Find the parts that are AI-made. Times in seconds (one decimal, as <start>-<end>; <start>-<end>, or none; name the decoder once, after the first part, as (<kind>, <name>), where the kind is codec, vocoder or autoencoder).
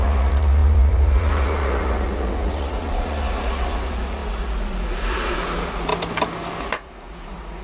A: 0.0-5.9 (vocoder, Vocos); 6.6-7.6